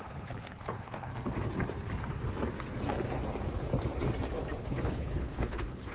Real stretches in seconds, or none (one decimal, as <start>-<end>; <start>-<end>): 1.1-4.6